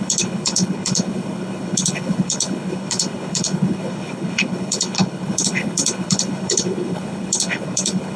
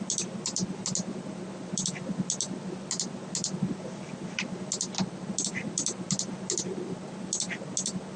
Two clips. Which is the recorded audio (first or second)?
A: second